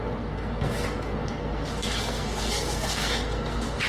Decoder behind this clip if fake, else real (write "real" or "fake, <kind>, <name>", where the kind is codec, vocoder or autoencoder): fake, codec, SNAC